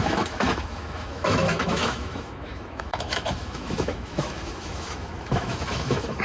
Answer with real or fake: fake